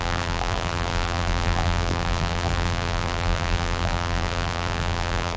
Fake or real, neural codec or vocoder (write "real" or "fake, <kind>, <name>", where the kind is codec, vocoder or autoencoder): fake, vocoder, BigVGAN v2